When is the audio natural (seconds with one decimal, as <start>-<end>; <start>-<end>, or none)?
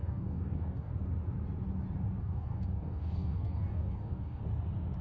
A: 0.9-2.2; 4.4-5.0